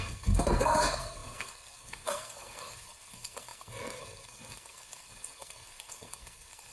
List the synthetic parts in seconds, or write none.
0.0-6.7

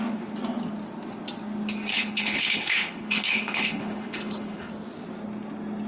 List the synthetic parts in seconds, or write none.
1.9-4.7

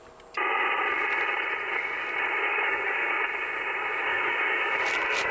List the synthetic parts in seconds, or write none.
2.5-3.1; 4.1-4.8

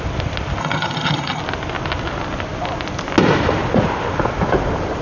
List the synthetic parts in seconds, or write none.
0.6-1.4